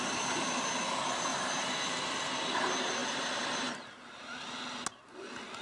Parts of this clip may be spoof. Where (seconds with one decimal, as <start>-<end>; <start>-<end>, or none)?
1.3-2.6; 3.0-4.1